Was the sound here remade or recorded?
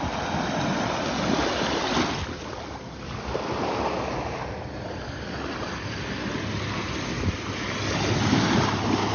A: recorded